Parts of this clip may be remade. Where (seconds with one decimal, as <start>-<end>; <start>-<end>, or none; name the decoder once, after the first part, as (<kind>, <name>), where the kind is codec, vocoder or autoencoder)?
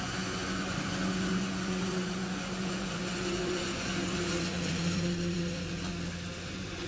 0.0-5.9 (vocoder, Vocos); 6.5-6.9